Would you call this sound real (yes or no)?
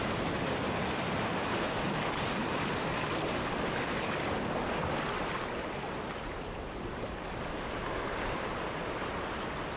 yes